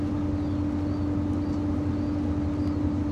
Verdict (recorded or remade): recorded